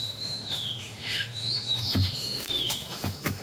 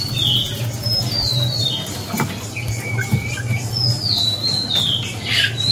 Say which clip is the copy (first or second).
first